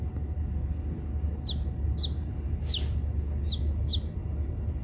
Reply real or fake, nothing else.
real